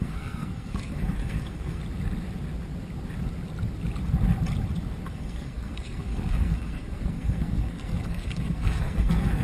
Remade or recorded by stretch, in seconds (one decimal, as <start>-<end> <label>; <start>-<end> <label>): 0.0-1.8 remade; 1.8-5.1 recorded; 5.1-9.4 remade